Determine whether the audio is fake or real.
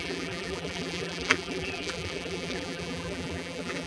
fake